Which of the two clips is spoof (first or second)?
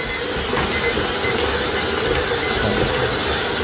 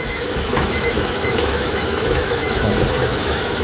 second